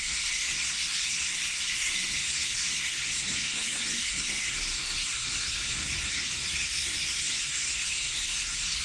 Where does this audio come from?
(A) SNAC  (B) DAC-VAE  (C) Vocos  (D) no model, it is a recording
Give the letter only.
A